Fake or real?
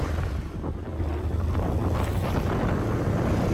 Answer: real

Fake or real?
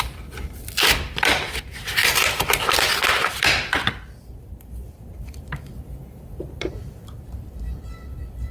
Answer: fake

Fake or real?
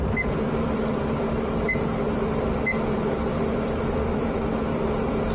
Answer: fake